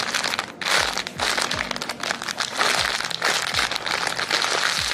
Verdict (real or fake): real